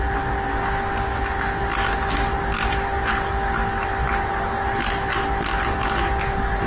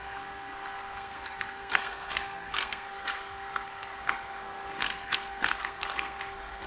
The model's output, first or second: second